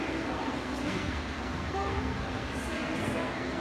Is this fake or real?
fake